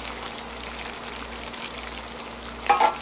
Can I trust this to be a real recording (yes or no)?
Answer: yes